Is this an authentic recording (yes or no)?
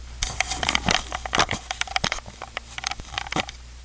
no